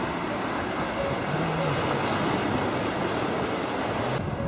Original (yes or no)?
yes